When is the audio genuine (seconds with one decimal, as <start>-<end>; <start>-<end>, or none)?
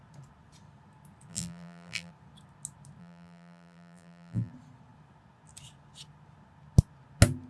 0.0-1.3; 2.1-3.0; 4.5-7.5